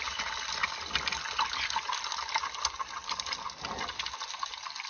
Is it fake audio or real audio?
real